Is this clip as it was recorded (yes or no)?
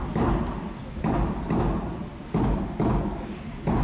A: yes